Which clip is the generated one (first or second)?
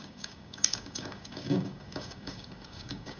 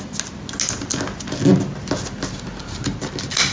first